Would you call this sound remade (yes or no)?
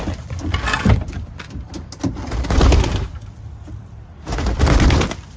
no